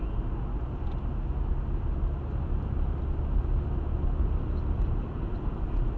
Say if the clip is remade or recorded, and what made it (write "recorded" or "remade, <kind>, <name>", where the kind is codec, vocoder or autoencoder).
recorded